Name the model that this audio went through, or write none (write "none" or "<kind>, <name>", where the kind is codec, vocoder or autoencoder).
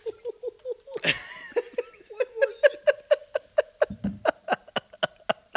none